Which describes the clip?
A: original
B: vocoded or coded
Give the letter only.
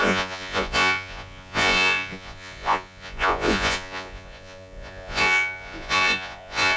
B